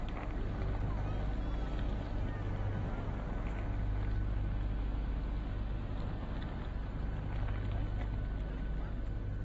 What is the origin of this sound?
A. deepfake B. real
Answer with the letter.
B